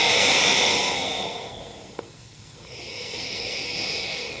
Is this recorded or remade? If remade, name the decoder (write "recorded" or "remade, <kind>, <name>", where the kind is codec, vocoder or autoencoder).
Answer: remade, codec, SNAC